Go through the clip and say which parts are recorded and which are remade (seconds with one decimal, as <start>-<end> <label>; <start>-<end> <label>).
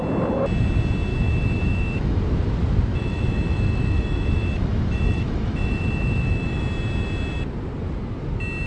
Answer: 0.0-1.1 recorded; 1.1-2.2 remade; 2.2-2.9 recorded; 2.9-6.6 remade; 6.6-8.7 recorded